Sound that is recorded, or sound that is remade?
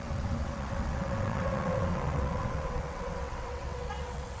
remade